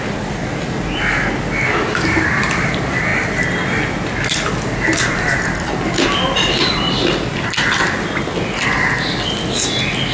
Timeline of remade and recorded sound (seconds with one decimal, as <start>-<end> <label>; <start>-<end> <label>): 0.0-10.1 recorded